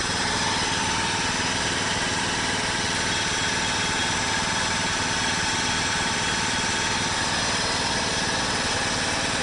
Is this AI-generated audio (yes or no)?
no